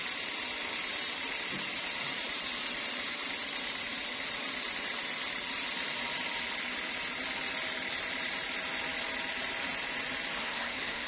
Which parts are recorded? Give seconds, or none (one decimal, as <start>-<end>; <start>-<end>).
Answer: 0.0-10.4